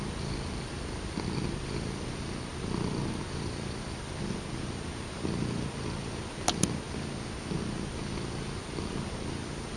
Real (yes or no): yes